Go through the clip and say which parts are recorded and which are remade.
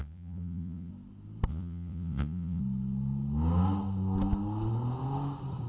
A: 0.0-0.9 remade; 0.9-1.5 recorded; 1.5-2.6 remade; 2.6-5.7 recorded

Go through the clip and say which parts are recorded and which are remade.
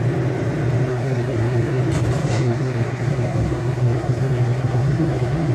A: 0.0-0.9 recorded; 0.9-1.8 remade; 1.8-2.2 recorded; 2.2-5.5 remade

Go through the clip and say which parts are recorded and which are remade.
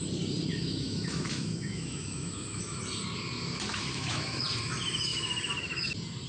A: 0.0-0.5 recorded; 0.5-2.8 remade; 2.8-3.7 recorded; 3.7-4.4 remade; 4.4-6.3 recorded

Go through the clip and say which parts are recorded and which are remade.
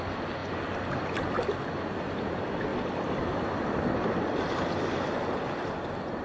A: 0.0-6.2 recorded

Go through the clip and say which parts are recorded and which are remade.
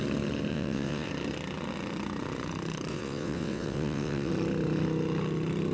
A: 0.0-0.5 recorded; 0.5-1.1 remade; 1.1-2.9 recorded; 2.9-4.3 remade; 4.3-5.7 recorded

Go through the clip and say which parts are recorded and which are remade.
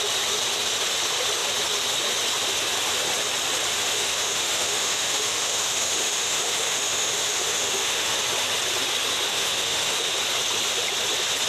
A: 0.0-3.8 recorded; 3.8-8.2 remade; 8.2-9.3 recorded; 9.3-10.1 remade; 10.1-11.5 recorded